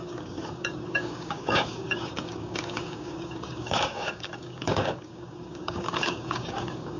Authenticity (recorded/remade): remade